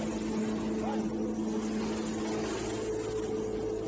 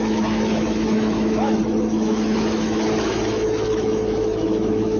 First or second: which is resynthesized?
second